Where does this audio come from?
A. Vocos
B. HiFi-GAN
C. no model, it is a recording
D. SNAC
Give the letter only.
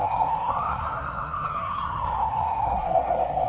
D